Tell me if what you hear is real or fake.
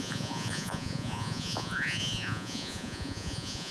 fake